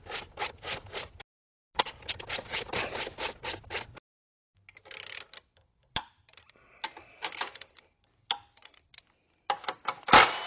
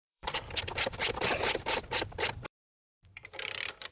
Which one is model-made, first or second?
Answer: second